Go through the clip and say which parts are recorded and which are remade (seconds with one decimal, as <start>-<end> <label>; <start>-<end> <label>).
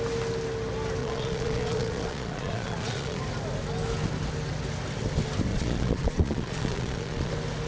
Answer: 0.0-1.0 recorded; 1.0-3.2 remade; 3.2-5.5 recorded; 5.5-7.3 remade; 7.3-7.7 recorded